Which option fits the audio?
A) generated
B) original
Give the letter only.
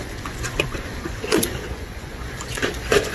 A